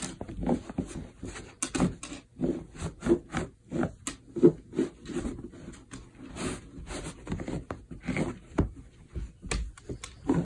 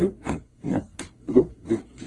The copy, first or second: second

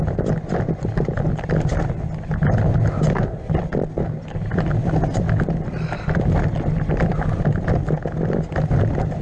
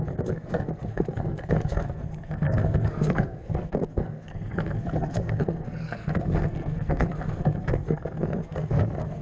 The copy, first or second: second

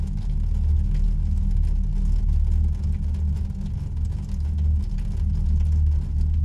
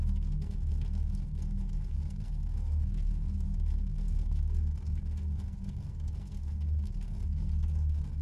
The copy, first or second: second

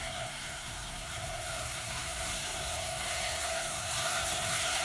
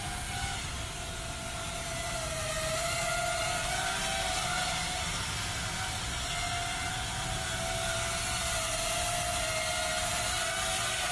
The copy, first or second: first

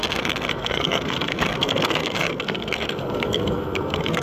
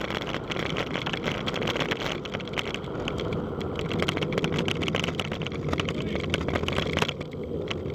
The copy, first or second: first